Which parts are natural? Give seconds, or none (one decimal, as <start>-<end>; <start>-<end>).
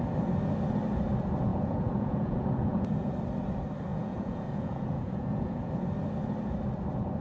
0.0-1.5; 3.1-3.9; 5.8-7.2